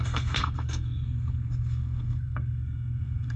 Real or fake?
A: fake